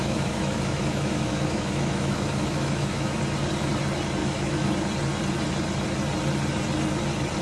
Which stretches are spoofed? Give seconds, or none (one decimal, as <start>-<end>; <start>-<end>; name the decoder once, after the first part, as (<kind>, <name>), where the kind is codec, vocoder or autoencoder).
0.0-3.2 (autoencoder, DAC-VAE); 4.2-4.7